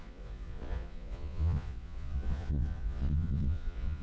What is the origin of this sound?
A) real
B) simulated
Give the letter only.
B